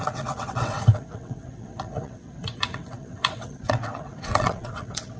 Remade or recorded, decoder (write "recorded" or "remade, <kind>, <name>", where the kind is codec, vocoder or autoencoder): remade, vocoder, WaveNeXt